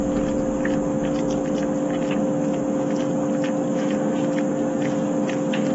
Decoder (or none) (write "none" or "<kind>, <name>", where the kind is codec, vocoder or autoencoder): none